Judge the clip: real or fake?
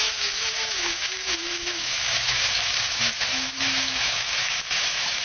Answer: fake